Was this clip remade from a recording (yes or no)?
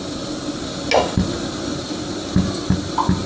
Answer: no